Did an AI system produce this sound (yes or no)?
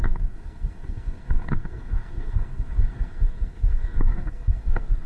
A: yes